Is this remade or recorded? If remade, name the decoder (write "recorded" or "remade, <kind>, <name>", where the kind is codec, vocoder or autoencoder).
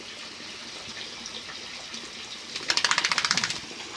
recorded